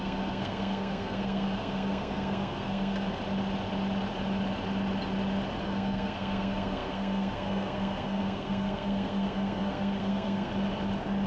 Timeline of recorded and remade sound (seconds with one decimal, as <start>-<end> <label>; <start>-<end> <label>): 0.0-3.2 remade; 3.2-5.6 recorded; 5.6-10.5 remade; 10.5-11.3 recorded